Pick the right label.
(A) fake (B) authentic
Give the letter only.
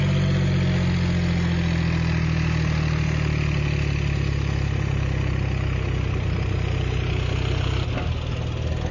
B